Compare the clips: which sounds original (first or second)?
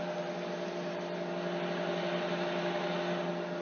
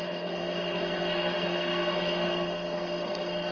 first